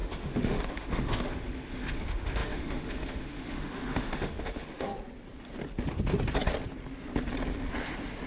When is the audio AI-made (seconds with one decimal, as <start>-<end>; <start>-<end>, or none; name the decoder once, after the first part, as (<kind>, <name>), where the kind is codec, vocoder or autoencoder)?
0.0-4.9 (autoencoder, DAC-VAE)